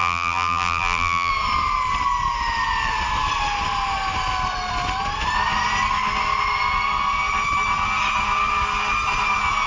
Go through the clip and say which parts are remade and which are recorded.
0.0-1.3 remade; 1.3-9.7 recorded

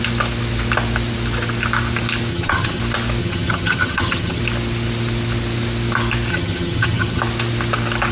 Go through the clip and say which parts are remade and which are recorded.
0.0-2.3 recorded; 2.3-2.8 remade; 2.8-3.2 recorded; 3.2-4.4 remade; 4.4-6.3 recorded; 6.3-7.2 remade; 7.2-8.1 recorded

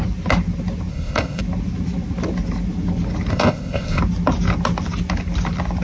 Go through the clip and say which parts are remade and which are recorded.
0.0-0.9 recorded; 0.9-1.4 remade; 1.4-3.3 recorded; 3.3-4.0 remade; 4.0-5.8 recorded

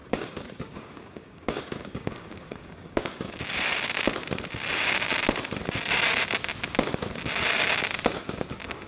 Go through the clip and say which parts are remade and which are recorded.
0.0-3.4 remade; 3.4-8.9 recorded

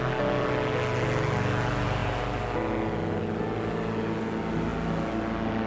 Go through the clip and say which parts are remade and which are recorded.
0.0-5.7 recorded